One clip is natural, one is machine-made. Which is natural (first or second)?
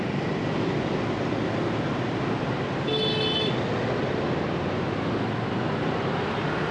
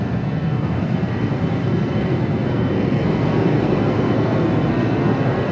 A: first